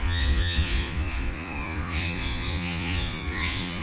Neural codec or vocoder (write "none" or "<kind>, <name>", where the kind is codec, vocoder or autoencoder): vocoder, Vocos